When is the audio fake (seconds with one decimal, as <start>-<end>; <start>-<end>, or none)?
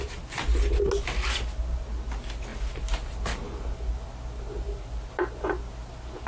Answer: none